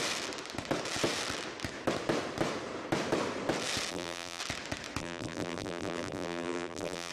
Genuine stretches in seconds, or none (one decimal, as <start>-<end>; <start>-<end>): 0.0-3.9; 4.4-5.0